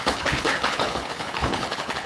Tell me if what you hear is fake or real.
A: fake